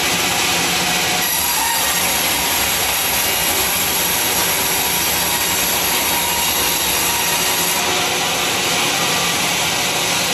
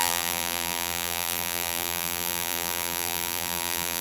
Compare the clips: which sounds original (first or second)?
first